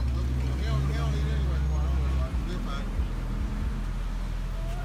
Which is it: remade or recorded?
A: recorded